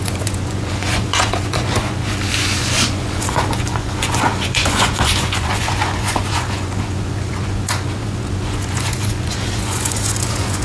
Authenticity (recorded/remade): remade